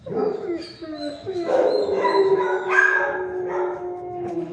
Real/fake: fake